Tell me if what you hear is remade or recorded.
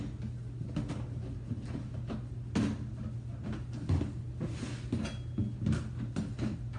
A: recorded